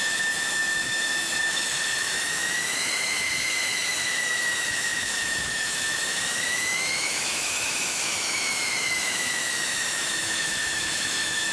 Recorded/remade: remade